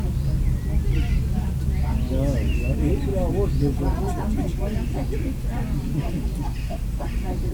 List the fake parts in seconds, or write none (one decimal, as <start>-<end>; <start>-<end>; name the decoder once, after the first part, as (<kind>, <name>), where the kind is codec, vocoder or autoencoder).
none